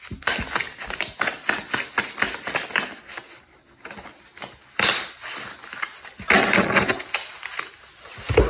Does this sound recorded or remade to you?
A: recorded